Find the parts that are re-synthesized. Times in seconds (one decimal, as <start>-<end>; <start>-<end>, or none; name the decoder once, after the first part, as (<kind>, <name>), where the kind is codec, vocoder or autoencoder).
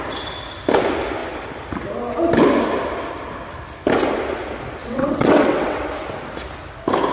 4.8-5.8 (vocoder, WaveNeXt)